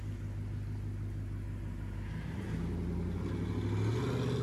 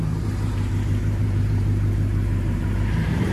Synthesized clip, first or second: second